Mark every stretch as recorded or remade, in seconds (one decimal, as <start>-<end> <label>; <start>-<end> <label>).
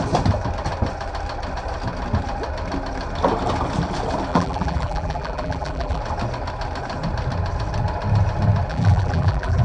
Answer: 0.0-4.3 recorded; 4.3-6.0 remade; 6.0-8.7 recorded; 8.7-9.6 remade